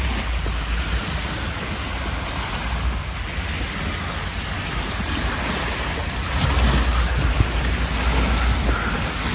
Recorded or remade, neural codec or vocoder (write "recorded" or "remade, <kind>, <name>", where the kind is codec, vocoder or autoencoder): recorded